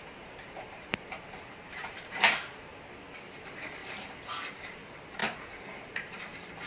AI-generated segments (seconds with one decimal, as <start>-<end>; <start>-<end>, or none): 0.0-2.7; 3.3-3.8; 4.5-6.7